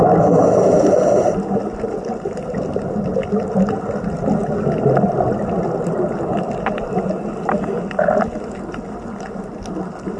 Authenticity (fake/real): real